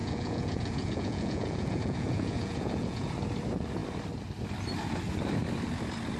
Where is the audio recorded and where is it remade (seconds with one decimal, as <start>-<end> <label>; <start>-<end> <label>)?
0.0-3.1 remade; 3.1-6.2 recorded

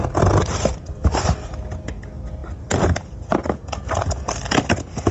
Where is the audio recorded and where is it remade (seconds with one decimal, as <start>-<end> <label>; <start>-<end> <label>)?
0.0-5.1 recorded

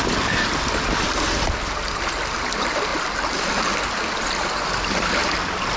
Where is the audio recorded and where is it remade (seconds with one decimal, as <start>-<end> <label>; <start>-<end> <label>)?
0.0-5.8 recorded